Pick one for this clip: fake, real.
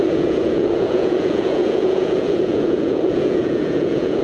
fake